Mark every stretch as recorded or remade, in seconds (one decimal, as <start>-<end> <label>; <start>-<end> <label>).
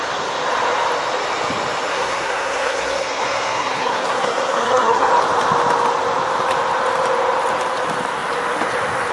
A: 0.0-1.9 recorded; 1.9-5.1 remade; 5.1-9.1 recorded